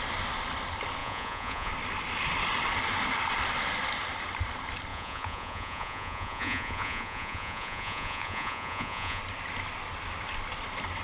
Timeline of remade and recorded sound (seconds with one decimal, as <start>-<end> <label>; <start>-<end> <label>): 0.0-1.0 recorded; 1.0-1.7 remade; 1.7-4.9 recorded; 4.9-9.2 remade; 9.2-11.0 recorded